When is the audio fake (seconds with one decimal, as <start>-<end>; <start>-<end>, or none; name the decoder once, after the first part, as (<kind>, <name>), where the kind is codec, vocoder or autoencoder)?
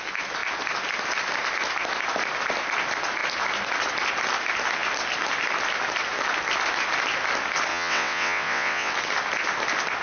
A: 7.7-8.9 (vocoder, WaveNeXt)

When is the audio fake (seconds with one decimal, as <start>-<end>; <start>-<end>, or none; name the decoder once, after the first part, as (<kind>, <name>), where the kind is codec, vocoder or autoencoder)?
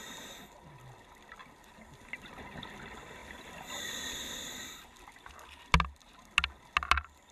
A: none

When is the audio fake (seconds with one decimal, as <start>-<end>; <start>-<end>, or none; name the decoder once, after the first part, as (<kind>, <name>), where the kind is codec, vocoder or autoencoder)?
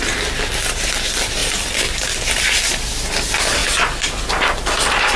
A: none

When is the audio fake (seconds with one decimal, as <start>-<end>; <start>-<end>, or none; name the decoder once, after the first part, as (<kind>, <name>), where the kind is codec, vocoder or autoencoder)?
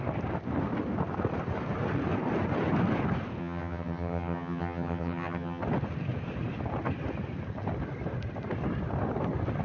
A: 3.4-5.6 (vocoder, HiFi-GAN)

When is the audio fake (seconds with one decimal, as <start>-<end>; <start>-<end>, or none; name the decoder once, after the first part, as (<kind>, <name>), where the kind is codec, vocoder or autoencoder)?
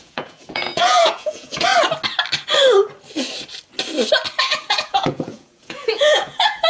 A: 0.0-1.7 (vocoder, Vocos); 4.4-6.7